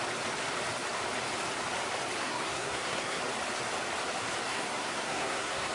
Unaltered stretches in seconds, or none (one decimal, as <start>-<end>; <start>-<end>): 0.0-2.2; 3.2-4.5